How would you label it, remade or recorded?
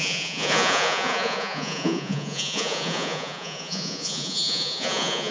remade